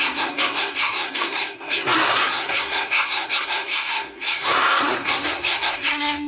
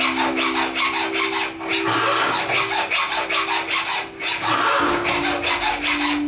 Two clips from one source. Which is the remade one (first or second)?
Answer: first